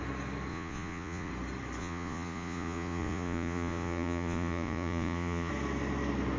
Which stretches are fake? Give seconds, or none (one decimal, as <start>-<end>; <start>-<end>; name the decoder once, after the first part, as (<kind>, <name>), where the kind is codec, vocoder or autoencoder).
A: 0.5-1.3 (vocoder, Vocos); 1.8-5.5